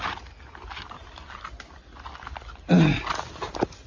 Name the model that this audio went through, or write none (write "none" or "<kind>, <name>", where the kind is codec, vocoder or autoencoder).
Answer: none